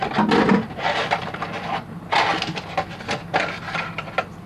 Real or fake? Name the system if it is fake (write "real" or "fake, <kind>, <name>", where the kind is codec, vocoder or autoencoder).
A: real